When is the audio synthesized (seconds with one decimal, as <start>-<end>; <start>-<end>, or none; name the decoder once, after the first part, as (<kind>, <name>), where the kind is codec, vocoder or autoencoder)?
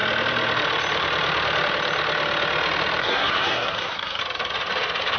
3.0-4.2 (codec, SNAC)